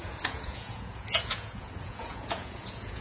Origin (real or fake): fake